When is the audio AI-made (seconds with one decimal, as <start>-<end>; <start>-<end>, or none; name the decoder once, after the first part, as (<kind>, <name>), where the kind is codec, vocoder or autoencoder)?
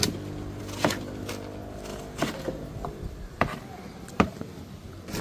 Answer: 1.9-5.2 (vocoder, BigVGAN v2)